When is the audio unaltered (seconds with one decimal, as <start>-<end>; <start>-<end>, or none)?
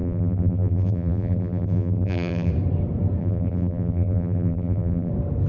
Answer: 2.5-3.2; 5.1-5.5